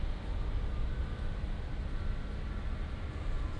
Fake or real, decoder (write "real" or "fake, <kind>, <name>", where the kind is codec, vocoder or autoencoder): real